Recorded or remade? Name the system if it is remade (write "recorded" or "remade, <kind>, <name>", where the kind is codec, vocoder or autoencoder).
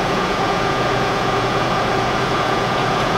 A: remade, vocoder, Vocos